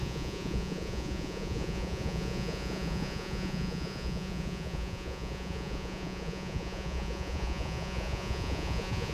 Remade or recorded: remade